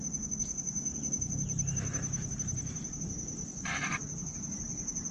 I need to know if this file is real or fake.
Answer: real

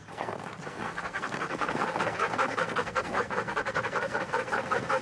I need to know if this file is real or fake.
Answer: fake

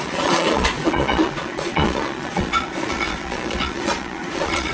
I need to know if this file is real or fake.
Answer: fake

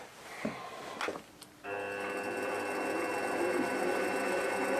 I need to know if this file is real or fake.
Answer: real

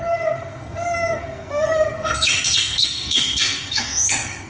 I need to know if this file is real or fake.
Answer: fake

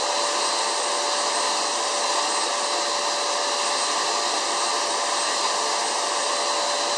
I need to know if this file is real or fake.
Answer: real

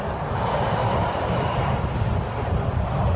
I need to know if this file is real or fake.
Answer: real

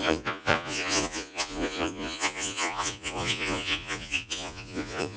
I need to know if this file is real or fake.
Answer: fake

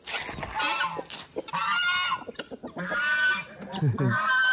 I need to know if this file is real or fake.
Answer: real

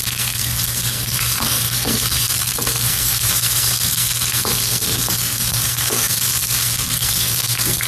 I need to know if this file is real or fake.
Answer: fake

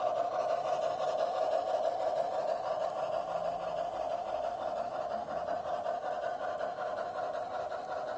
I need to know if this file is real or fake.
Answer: real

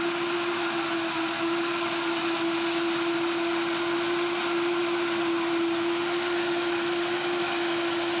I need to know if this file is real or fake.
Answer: real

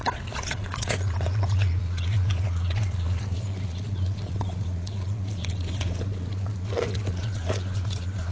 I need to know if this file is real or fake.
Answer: fake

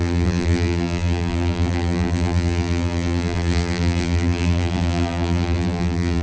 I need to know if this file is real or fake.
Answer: fake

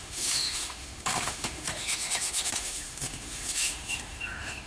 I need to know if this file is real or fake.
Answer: fake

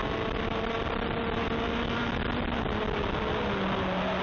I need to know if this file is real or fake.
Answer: real